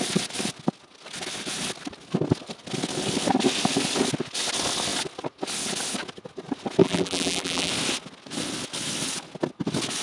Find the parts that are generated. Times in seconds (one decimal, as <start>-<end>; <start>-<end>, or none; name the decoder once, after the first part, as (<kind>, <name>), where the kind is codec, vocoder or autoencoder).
6.8-7.7 (vocoder, BigVGAN v2)